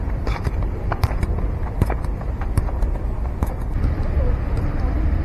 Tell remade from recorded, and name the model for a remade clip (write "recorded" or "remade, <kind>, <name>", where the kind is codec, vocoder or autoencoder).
remade, vocoder, BigVGAN v2